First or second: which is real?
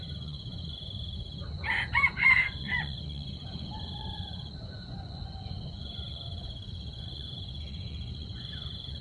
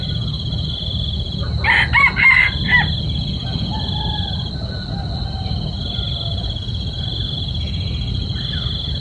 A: second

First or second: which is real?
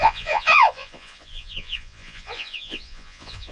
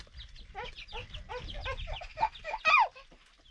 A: second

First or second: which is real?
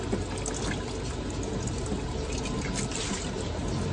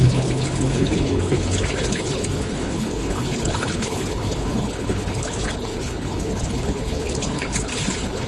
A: first